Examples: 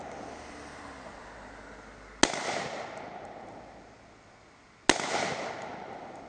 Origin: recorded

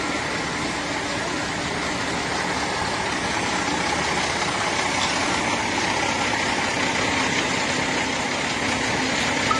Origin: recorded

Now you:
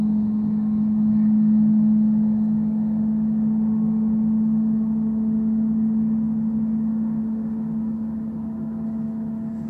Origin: recorded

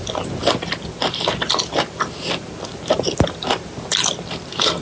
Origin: recorded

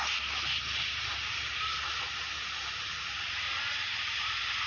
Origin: recorded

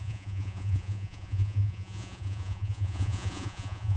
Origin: remade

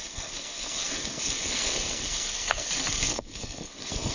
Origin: remade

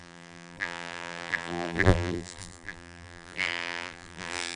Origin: remade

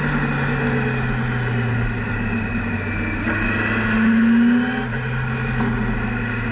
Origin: recorded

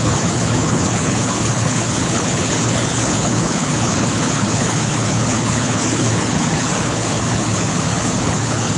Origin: remade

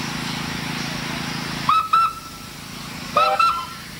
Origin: recorded